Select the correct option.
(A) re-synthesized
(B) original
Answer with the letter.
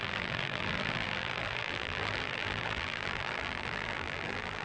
A